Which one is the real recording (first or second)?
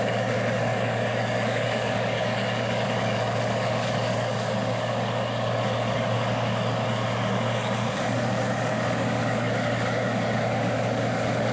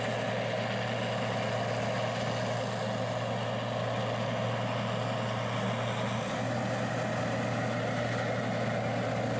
second